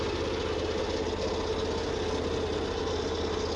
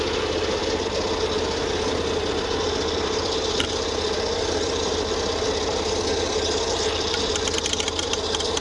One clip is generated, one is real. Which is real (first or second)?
first